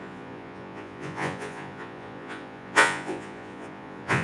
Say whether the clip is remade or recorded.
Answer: remade